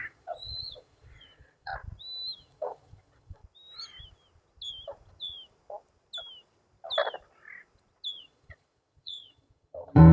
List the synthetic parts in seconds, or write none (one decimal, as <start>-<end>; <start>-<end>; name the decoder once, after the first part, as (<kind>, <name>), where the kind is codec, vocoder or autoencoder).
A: 0.0-1.7 (vocoder, Vocos); 2.4-3.4; 8.2-10.1